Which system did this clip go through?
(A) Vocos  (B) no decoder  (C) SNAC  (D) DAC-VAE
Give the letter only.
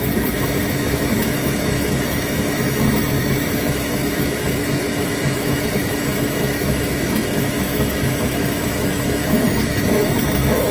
D